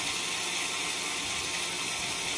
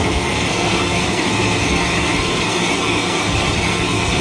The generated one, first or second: second